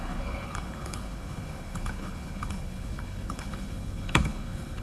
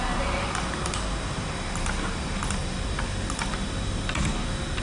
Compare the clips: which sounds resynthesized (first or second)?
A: first